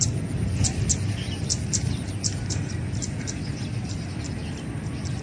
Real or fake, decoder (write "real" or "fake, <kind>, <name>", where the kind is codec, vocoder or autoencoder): real